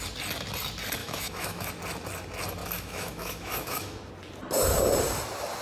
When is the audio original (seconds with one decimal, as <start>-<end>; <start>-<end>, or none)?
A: 0.0-1.0; 1.7-2.6; 4.1-5.6